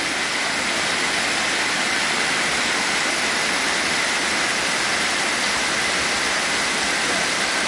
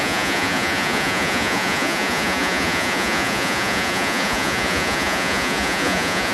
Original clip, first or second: first